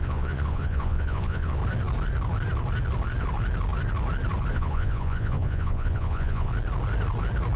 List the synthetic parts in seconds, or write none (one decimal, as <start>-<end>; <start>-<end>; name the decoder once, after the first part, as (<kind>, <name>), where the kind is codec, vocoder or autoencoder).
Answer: 0.0-1.6 (vocoder, Vocos); 4.5-6.5